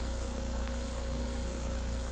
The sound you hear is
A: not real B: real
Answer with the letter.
A